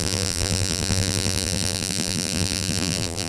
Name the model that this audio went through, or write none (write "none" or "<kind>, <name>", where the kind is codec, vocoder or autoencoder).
vocoder, BigVGAN v2